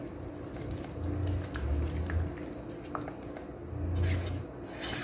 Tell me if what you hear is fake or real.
real